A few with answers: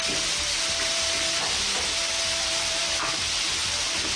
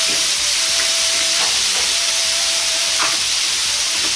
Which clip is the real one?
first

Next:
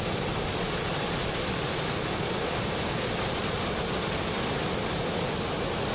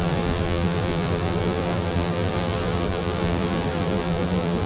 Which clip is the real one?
first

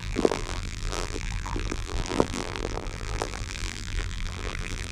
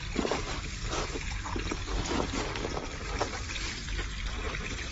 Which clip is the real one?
second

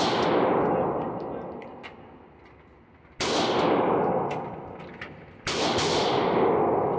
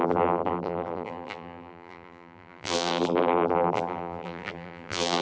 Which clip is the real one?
first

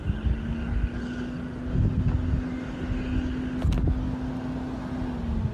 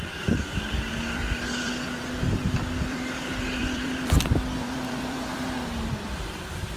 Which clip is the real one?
first